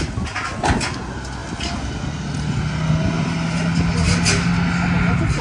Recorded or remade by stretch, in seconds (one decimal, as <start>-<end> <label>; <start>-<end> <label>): 0.0-5.4 recorded